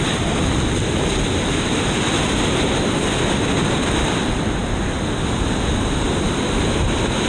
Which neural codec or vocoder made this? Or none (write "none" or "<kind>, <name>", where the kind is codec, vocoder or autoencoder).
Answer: none